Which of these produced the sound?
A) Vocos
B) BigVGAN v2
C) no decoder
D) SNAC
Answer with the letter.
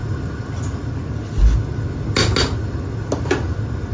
C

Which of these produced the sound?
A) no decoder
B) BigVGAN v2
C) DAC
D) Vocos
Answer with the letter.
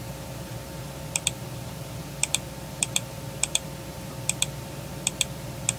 B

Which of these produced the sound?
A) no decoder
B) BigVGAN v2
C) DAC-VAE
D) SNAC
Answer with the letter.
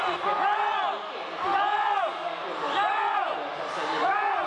A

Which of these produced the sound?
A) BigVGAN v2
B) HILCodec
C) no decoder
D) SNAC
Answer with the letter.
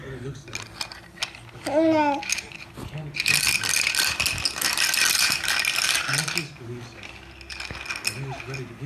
C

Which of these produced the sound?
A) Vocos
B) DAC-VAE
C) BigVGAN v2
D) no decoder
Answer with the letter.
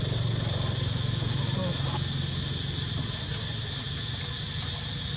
D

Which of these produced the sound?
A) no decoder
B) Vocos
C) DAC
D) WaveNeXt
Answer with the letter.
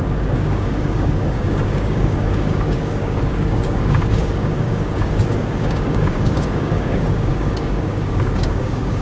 C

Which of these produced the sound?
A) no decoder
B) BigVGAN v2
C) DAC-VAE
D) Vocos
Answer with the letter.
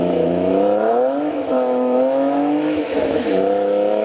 C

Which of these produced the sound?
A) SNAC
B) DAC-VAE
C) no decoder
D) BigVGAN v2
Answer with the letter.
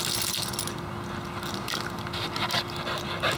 C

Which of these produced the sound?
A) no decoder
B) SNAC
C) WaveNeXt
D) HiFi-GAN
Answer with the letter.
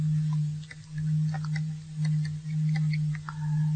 A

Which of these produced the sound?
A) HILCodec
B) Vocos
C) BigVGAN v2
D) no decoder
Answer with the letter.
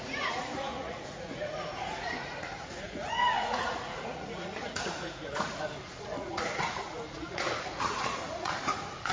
B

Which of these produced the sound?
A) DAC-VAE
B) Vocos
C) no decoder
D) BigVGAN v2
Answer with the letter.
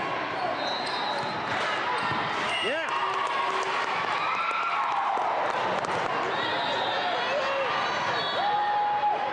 C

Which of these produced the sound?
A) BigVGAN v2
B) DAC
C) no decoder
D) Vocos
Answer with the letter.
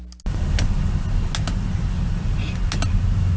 C